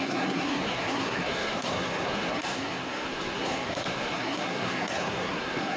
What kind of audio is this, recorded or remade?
remade